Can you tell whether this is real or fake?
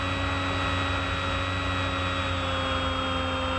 real